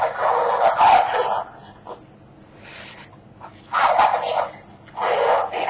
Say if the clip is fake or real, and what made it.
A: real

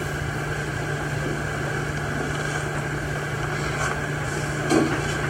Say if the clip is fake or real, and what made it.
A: real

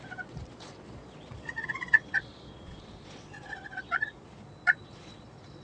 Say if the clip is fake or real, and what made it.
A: fake, vocoder, Vocos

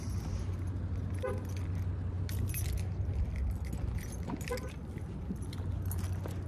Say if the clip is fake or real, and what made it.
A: real